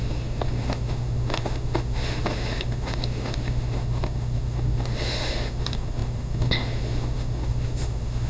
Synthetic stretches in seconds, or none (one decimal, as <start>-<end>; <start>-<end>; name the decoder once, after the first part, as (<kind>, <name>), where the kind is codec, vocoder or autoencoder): 0.0-8.3 (autoencoder, DAC-VAE)